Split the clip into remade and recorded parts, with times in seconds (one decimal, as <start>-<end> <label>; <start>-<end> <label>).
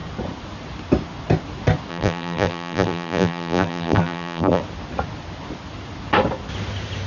0.0-1.9 recorded; 1.9-4.6 remade; 4.6-7.1 recorded